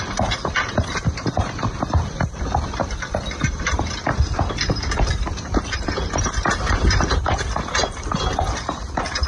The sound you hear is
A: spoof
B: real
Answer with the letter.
A